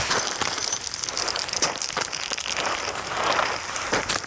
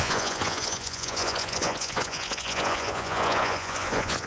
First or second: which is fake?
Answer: second